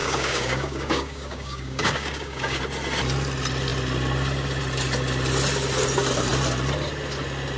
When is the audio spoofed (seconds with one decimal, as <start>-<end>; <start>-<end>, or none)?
0.0-2.6